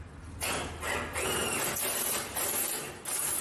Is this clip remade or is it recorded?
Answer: recorded